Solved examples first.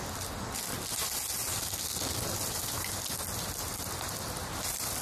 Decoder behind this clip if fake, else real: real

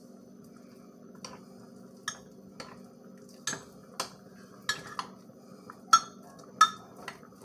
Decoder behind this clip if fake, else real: real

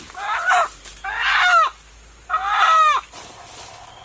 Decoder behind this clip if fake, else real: real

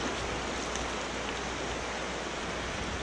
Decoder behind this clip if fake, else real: real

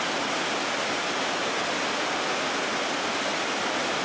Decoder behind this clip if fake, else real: real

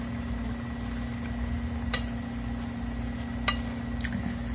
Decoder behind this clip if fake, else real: real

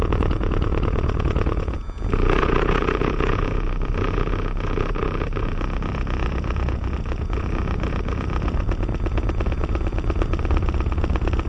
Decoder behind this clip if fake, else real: fake, vocoder, Vocos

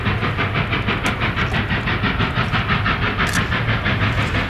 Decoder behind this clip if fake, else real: real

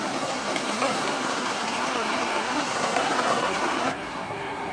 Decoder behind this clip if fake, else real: fake, codec, SNAC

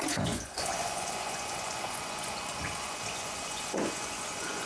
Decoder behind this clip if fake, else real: fake, vocoder, Vocos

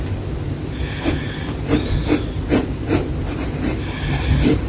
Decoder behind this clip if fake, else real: real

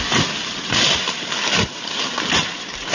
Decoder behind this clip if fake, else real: real